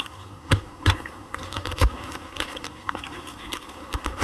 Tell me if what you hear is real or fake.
fake